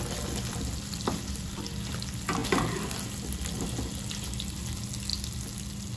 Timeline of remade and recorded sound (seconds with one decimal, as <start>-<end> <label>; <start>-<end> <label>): 0.0-6.0 recorded